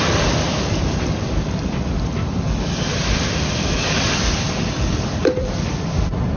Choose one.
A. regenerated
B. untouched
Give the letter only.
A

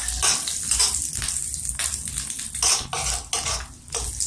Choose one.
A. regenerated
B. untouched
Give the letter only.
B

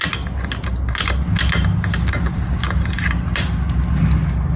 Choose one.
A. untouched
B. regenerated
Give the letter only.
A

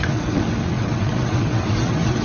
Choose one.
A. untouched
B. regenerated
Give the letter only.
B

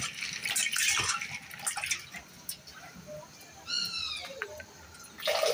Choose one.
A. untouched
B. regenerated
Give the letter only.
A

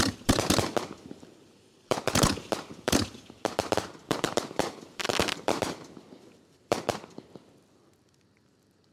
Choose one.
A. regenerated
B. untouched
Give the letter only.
A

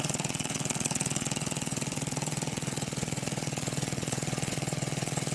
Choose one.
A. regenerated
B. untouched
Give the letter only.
A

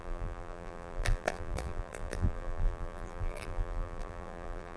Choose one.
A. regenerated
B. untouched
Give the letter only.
A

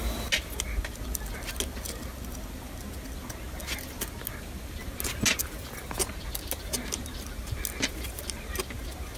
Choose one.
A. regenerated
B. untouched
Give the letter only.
B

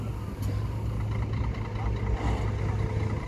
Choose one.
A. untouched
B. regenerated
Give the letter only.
A